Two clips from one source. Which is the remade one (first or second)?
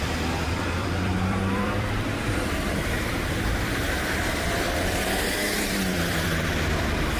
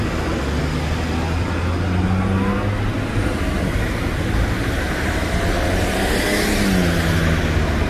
first